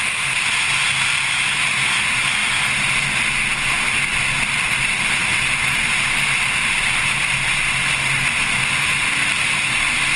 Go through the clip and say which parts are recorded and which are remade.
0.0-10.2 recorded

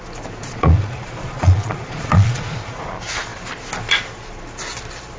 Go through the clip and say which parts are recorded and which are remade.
0.0-0.4 recorded; 0.4-2.9 remade; 2.9-5.2 recorded

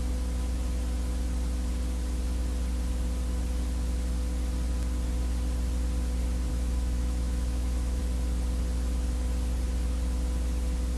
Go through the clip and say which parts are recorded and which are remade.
0.0-6.5 recorded; 6.5-8.0 remade; 8.0-11.0 recorded